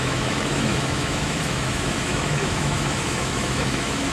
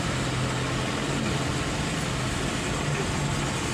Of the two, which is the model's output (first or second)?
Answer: first